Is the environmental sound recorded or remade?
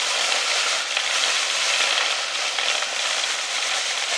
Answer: recorded